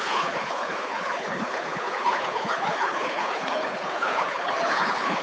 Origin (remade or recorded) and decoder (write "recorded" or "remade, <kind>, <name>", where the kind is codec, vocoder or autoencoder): remade, codec, HILCodec